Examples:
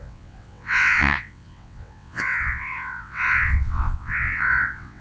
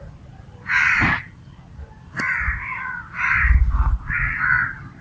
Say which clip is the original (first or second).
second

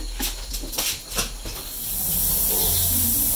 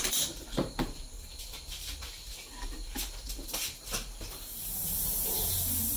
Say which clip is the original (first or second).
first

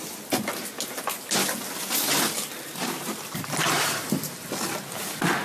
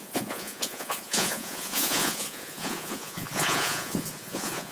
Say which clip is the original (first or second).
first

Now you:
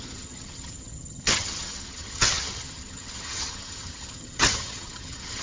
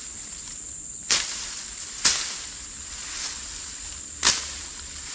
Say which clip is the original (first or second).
second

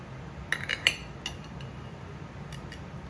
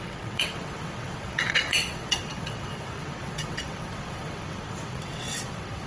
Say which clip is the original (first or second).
first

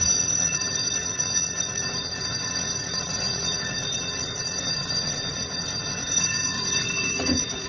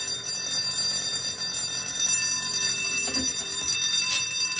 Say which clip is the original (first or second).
second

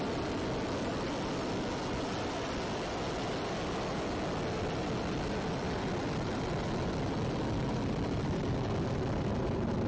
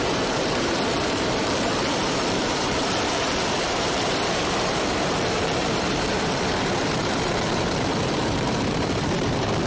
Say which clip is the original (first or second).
first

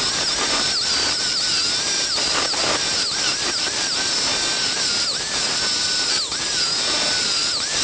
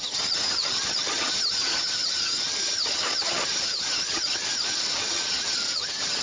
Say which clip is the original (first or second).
first